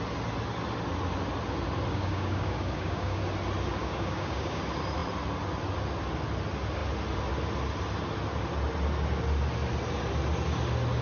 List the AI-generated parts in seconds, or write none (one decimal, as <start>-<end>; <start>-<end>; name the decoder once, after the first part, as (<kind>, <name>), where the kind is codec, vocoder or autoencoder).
1.9-3.2 (codec, DAC); 3.8-4.6